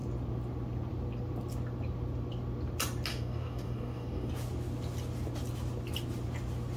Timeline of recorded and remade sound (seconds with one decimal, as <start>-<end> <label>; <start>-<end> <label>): 0.0-3.1 recorded; 3.1-4.3 remade; 4.3-6.8 recorded